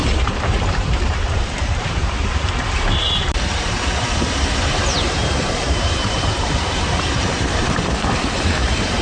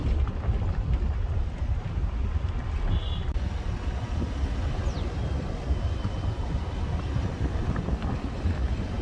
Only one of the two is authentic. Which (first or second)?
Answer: second